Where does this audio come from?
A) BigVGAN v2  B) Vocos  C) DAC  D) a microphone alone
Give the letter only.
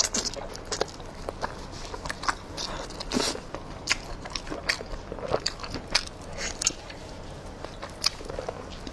D